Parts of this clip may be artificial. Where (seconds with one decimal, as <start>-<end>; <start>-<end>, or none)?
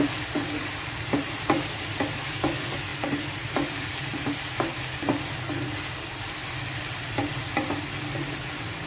none